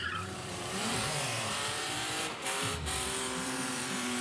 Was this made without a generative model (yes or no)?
no